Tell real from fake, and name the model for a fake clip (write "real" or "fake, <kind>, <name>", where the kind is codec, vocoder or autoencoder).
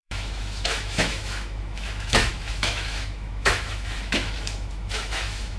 fake, autoencoder, DAC-VAE